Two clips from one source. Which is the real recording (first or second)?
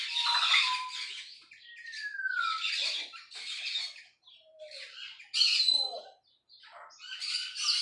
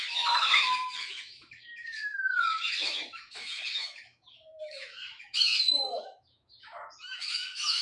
first